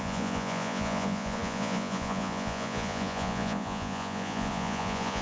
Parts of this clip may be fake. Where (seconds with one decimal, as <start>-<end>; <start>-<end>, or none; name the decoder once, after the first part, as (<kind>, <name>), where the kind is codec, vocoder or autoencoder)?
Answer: 0.0-5.2 (vocoder, Vocos)